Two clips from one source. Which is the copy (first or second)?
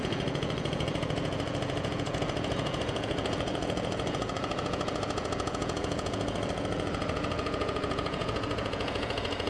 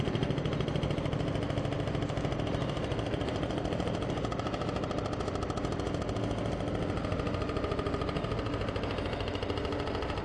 first